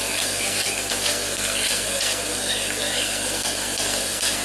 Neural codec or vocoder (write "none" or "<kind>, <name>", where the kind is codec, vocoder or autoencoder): codec, SNAC